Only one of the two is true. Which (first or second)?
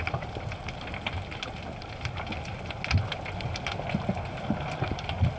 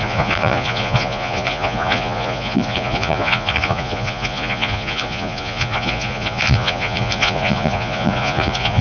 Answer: first